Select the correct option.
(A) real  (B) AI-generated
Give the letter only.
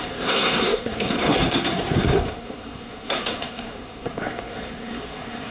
B